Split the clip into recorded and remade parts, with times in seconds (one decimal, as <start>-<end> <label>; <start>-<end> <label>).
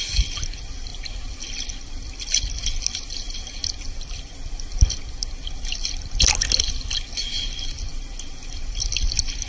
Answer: 0.0-9.5 recorded